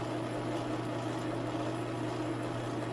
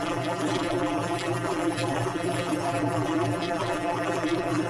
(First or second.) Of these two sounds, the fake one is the second